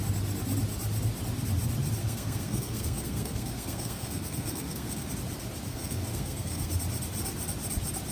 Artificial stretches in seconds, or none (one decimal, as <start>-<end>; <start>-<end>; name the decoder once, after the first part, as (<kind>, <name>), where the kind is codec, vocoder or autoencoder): 2.0-5.1 (codec, SNAC); 5.7-6.7